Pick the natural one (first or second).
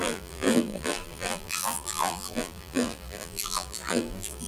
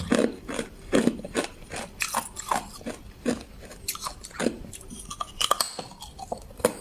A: second